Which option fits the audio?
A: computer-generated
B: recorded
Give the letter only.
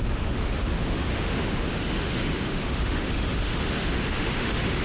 A